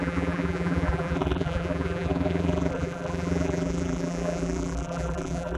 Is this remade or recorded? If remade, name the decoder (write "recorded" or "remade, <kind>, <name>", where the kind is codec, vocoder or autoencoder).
remade, vocoder, BigVGAN v2